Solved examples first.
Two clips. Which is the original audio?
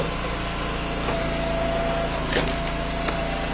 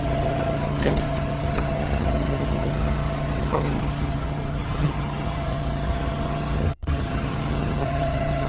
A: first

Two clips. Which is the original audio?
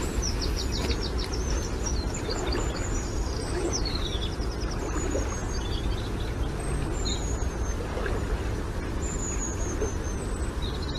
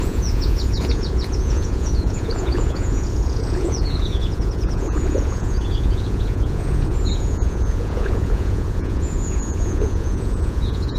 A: first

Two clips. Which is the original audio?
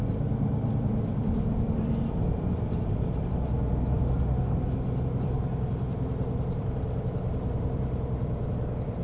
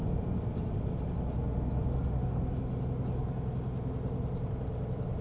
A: second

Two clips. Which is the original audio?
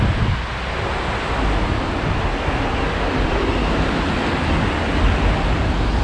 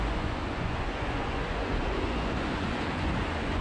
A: first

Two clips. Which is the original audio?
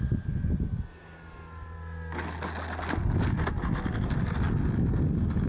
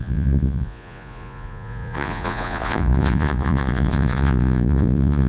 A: first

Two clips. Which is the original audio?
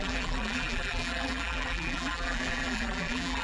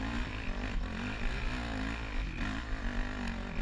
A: second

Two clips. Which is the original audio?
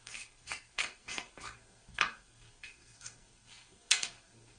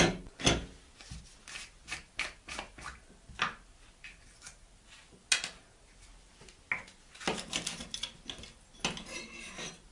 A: second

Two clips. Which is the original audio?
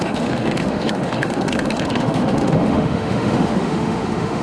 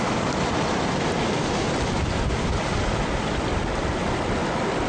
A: second